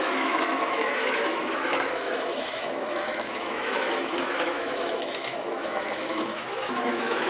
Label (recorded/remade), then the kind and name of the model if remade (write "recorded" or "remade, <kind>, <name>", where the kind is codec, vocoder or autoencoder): remade, autoencoder, DAC-VAE